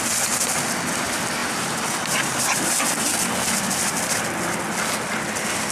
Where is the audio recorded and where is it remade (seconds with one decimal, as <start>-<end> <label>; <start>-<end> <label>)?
0.0-5.7 recorded